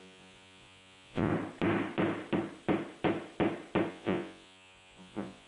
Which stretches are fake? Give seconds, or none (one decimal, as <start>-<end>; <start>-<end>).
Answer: 0.0-1.3; 3.9-5.5